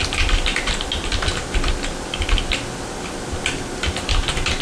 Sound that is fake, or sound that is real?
real